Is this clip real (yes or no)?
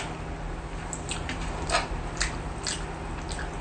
yes